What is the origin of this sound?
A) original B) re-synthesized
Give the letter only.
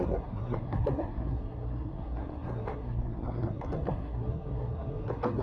B